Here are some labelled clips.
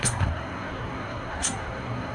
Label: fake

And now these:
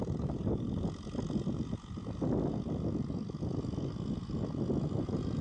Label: real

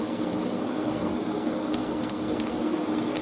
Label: fake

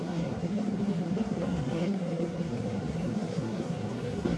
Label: fake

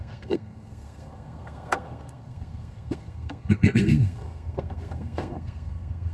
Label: fake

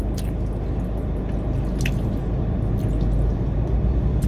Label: real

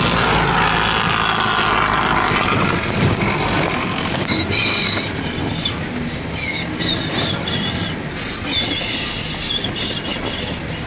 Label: real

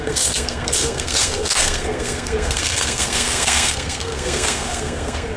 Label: fake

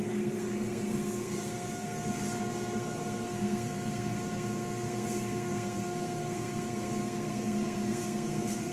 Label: fake